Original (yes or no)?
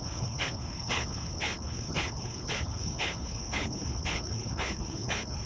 no